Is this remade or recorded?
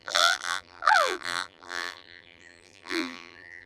remade